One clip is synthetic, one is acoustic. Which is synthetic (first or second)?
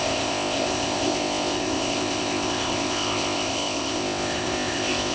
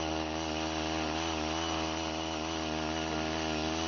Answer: first